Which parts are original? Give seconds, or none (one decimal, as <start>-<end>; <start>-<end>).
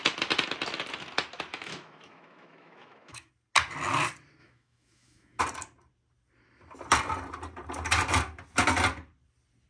0.0-1.5; 3.3-4.4; 5.4-9.7